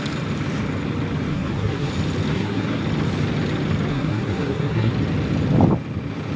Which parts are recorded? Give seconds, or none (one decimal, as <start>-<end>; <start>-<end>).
0.0-1.3; 1.9-2.3; 2.8-3.9; 4.9-6.4

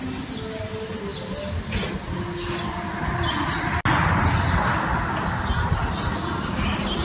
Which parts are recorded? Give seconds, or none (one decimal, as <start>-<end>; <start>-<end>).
0.0-7.0

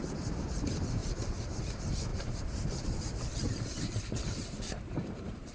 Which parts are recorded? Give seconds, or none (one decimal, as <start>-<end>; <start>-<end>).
0.0-1.0; 1.6-2.1

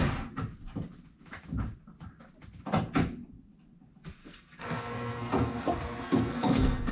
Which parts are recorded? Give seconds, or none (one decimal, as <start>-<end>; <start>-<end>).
0.0-4.2

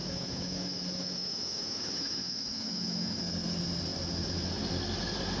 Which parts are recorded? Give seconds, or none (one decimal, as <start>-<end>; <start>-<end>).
3.2-5.4